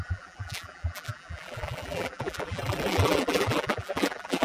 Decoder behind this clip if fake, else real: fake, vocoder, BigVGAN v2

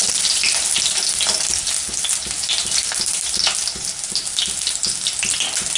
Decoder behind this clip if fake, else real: real